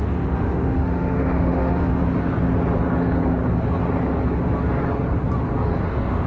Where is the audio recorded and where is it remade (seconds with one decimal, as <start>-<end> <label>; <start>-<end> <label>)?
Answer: 0.0-2.0 remade; 2.0-5.8 recorded; 5.8-6.3 remade